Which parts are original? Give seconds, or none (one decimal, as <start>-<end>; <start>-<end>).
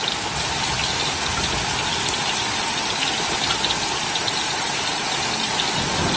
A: 0.0-6.2